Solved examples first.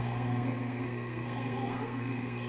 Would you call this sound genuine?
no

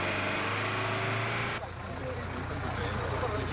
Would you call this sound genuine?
yes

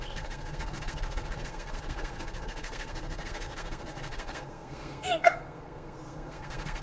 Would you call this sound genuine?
no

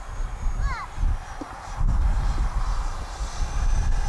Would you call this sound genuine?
yes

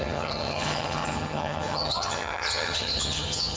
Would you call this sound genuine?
no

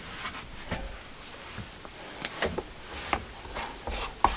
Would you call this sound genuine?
yes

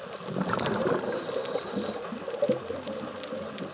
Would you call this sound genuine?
yes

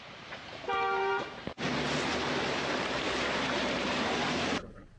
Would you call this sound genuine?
no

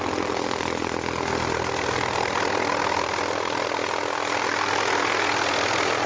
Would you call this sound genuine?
yes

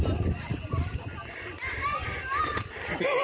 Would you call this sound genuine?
yes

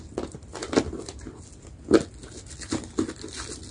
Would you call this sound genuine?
yes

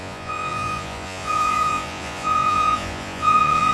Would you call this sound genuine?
no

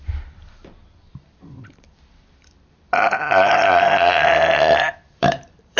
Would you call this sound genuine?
no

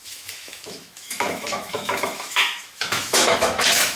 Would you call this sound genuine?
no